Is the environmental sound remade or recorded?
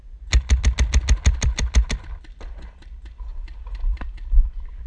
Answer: recorded